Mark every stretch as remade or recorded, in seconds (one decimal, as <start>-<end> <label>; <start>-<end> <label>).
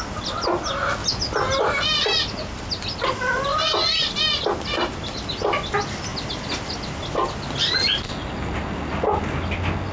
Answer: 0.0-9.9 recorded